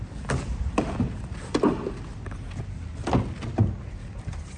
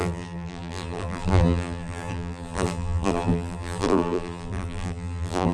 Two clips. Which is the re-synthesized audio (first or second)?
second